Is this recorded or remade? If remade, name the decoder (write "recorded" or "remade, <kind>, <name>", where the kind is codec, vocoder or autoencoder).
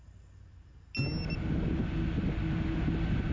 recorded